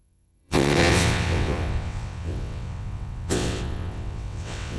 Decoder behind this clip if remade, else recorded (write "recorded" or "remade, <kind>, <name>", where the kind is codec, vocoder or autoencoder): remade, vocoder, WaveNeXt